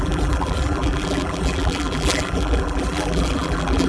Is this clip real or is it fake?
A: fake